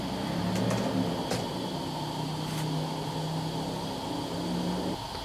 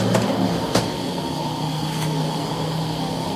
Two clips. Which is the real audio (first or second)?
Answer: first